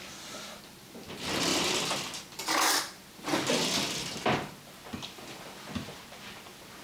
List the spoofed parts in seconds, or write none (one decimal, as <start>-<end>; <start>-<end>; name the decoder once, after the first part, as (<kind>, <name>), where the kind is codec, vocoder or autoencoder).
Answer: none